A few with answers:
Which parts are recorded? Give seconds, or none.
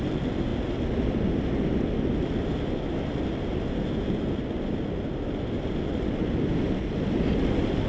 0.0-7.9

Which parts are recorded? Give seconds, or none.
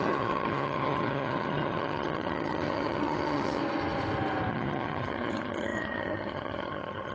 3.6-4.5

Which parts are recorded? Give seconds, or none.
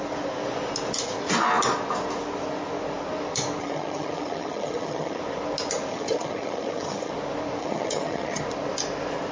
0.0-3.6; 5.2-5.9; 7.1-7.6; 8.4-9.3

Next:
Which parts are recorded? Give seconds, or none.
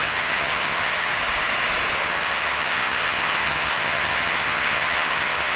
1.1-1.9